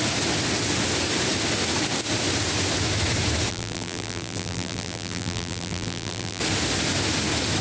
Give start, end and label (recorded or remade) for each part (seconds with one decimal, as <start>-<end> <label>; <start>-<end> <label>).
0.0-3.5 recorded; 3.5-6.4 remade; 6.4-7.6 recorded